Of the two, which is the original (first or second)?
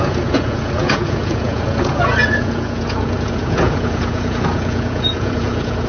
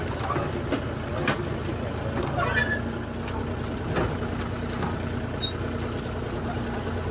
second